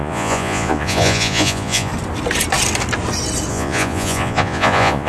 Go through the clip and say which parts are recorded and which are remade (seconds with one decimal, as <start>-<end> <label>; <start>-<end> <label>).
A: 0.0-1.9 remade; 1.9-3.5 recorded; 3.5-5.1 remade